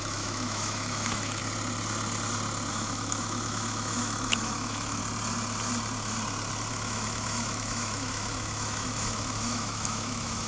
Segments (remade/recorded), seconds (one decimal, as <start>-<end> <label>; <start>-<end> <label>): 0.0-1.4 remade; 1.4-2.7 recorded; 2.7-5.0 remade; 5.0-6.7 recorded; 6.7-10.5 remade